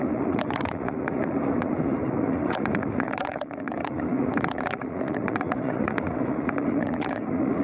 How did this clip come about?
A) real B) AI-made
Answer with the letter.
B